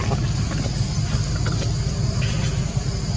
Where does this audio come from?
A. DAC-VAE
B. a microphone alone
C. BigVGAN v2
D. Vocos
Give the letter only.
B